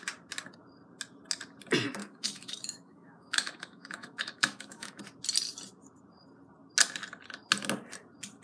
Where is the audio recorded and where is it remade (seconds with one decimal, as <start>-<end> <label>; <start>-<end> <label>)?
0.0-2.0 recorded; 2.0-5.0 remade; 5.0-8.4 recorded